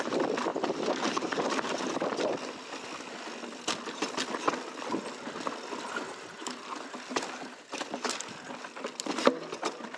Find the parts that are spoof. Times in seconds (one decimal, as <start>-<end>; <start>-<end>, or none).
0.5-1.5